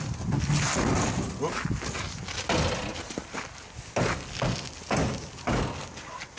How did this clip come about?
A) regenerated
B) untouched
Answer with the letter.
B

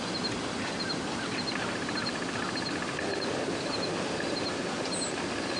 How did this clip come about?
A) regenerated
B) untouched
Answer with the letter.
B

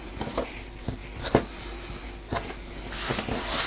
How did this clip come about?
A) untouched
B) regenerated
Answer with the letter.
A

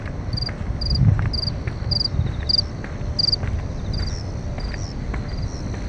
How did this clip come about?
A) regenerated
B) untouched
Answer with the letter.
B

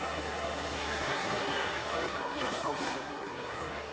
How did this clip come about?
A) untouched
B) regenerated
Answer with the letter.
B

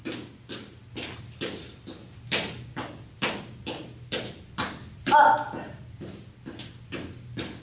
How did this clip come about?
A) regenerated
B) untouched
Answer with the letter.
B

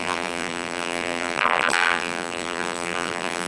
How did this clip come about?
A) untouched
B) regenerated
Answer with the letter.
B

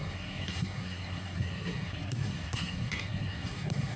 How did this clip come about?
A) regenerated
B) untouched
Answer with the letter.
A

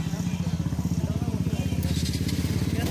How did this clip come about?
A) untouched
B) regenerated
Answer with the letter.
A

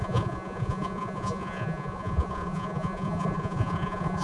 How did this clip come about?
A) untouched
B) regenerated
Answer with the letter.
B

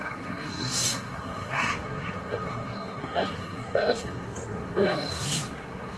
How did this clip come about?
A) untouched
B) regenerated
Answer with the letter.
B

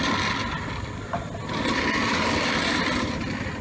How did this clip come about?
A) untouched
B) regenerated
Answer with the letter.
A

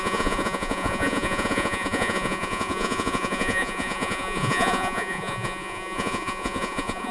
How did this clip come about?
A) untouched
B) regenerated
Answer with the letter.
B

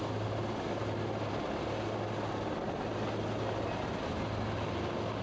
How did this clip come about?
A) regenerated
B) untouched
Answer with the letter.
B